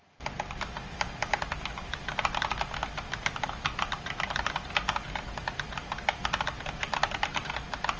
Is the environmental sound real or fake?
real